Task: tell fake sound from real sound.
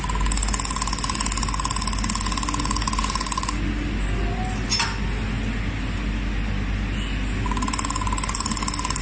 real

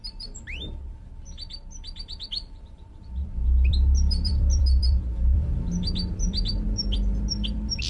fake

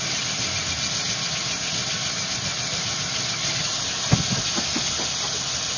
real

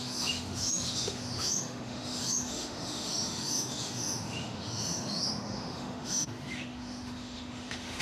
fake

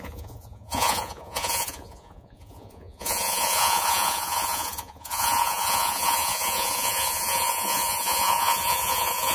fake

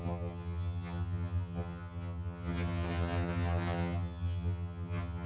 fake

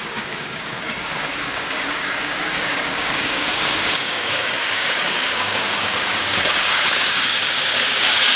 fake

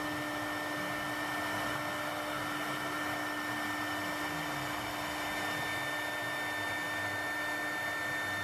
real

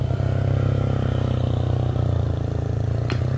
real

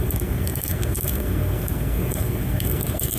fake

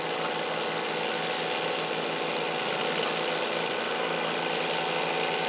real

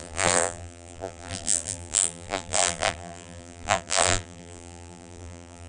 fake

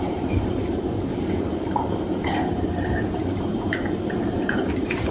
fake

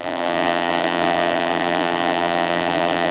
fake